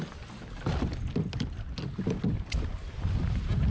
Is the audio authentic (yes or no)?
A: yes